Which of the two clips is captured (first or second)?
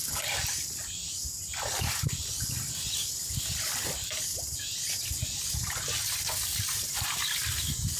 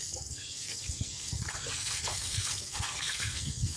first